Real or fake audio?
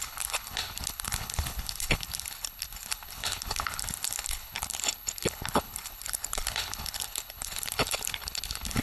fake